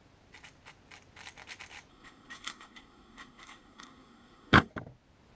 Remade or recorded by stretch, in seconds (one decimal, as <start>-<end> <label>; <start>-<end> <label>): 0.0-1.9 recorded; 1.9-4.7 remade; 4.7-5.4 recorded